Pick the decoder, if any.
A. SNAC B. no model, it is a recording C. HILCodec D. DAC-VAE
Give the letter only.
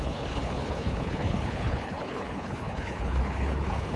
C